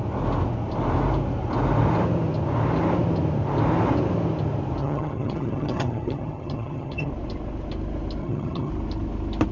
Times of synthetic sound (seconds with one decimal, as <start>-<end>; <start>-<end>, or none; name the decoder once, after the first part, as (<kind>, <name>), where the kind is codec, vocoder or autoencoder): 4.8-7.1 (vocoder, HiFi-GAN); 8.2-8.7